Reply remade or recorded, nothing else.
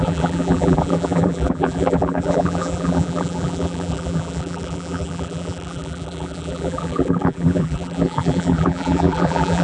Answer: remade